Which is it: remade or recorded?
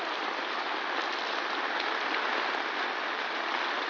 remade